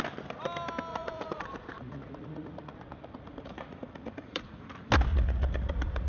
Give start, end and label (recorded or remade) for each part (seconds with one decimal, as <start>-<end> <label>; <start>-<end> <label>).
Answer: 0.0-0.9 recorded; 0.9-4.6 remade; 4.6-5.1 recorded; 5.1-6.1 remade